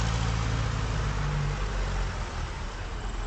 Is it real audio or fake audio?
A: real